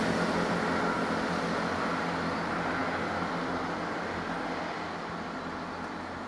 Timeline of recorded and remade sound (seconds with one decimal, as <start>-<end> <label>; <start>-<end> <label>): 0.0-6.3 recorded